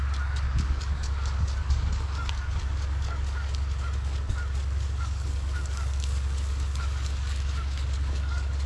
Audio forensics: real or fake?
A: fake